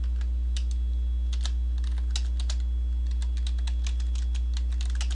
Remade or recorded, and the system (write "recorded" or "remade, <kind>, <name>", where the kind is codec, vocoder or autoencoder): recorded